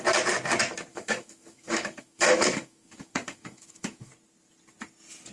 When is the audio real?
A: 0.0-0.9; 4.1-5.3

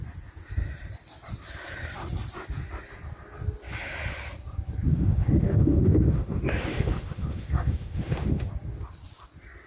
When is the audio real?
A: 0.0-4.9; 8.5-9.7

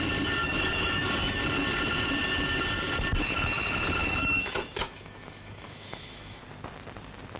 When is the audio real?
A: 0.0-0.4; 1.4-4.0; 6.4-7.4